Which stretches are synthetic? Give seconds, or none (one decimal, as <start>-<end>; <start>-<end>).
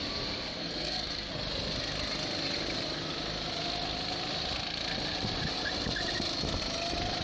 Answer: 0.6-1.3